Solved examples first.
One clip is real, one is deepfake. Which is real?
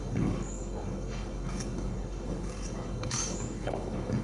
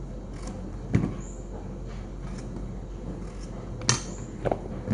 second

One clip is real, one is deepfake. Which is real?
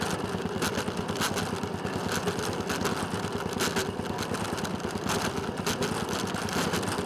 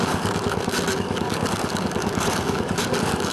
first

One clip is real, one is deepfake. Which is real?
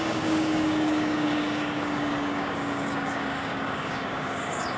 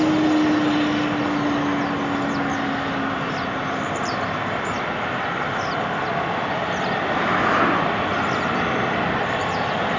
second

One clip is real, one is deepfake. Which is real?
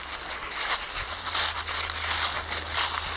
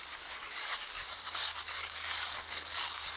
first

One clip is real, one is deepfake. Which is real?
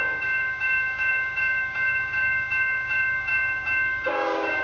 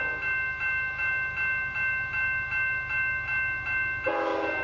second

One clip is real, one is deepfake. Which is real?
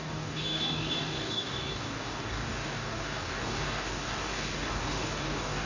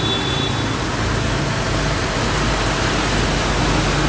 second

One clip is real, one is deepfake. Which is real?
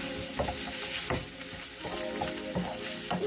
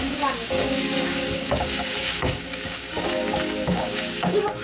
first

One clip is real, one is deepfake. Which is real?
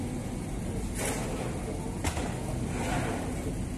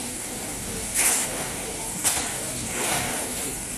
first